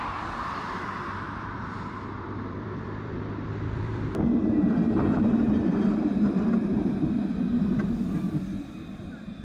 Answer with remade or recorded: remade